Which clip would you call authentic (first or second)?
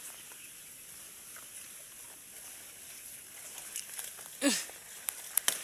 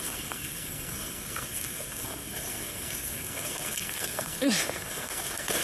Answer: first